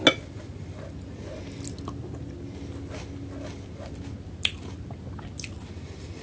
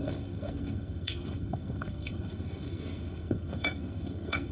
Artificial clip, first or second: second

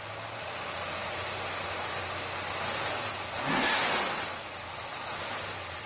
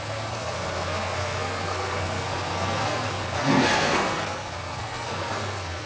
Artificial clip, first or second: second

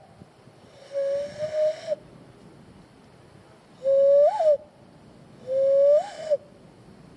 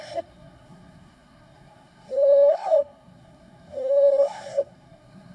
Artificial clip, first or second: second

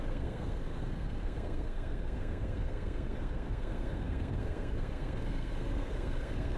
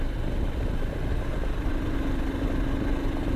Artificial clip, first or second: first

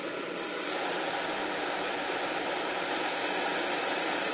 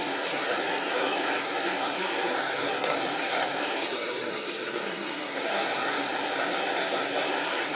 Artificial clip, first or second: second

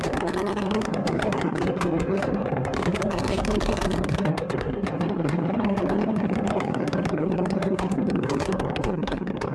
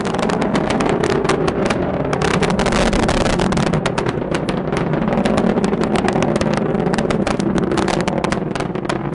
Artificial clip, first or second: first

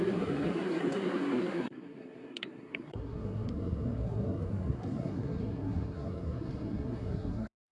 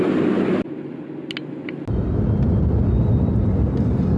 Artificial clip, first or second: first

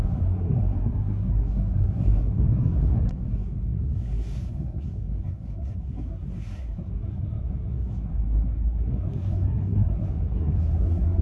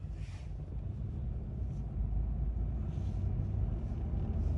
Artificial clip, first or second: first